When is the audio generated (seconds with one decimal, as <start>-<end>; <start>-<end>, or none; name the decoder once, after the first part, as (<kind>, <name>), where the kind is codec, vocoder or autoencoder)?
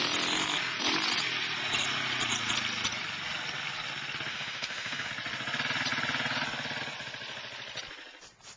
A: 4.3-5.1 (autoencoder, DAC-VAE)